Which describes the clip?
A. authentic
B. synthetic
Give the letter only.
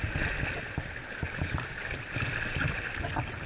A